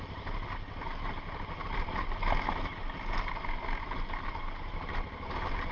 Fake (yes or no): no